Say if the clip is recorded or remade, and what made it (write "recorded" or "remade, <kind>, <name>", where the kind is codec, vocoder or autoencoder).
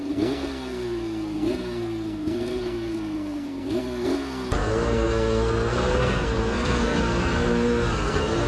remade, codec, SNAC